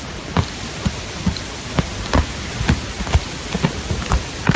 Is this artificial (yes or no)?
no